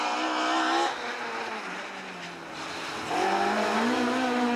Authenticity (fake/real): real